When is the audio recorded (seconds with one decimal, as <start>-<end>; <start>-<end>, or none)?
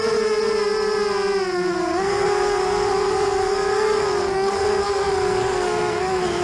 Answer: 0.0-1.8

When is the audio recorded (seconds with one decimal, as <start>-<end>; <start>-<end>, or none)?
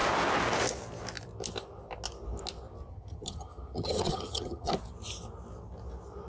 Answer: 0.0-2.9; 4.7-6.3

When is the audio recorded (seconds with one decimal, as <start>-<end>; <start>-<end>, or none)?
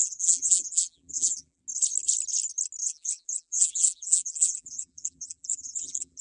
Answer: 1.6-2.8